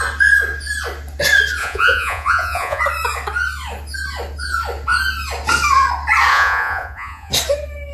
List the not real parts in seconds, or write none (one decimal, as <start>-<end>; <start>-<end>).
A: 1.6-2.8; 6.3-7.3